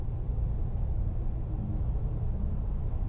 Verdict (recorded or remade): recorded